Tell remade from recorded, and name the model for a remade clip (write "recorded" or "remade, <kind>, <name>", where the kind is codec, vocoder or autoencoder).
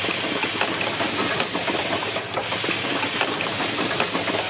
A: recorded